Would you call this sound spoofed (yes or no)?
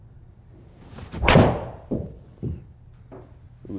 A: no